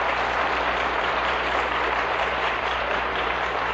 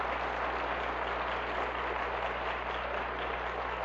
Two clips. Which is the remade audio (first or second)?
first